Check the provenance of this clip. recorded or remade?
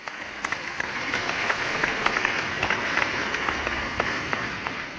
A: remade